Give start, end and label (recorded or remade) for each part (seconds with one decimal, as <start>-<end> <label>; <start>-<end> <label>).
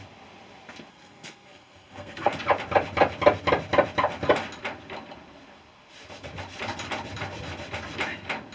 0.0-0.9 recorded; 0.9-2.3 remade; 2.3-8.5 recorded